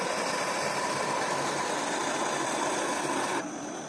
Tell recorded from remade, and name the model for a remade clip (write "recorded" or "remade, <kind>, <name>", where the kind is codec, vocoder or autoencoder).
recorded